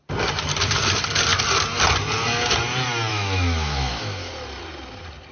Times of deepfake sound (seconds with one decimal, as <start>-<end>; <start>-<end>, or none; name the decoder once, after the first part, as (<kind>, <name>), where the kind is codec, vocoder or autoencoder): 3.1-4.3 (autoencoder, DAC-VAE)